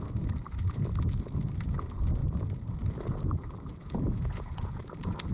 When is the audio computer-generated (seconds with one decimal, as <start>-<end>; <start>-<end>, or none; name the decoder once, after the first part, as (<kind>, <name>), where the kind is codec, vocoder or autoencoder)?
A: 3.7-4.8 (vocoder, Vocos)